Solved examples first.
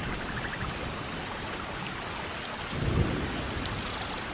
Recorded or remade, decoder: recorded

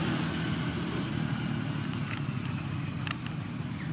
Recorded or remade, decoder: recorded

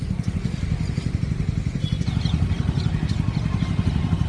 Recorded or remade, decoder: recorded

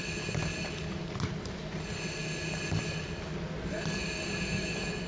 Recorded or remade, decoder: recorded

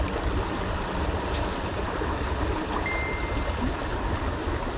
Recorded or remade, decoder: recorded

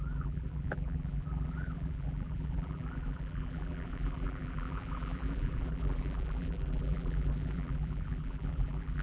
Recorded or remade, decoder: remade, vocoder, BigVGAN v2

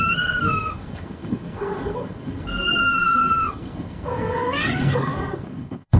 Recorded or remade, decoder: remade, codec, SNAC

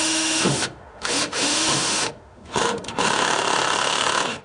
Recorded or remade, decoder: remade, autoencoder, DAC-VAE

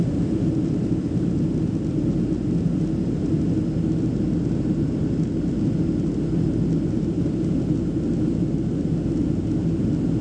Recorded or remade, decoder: recorded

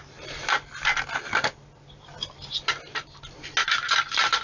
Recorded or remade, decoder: recorded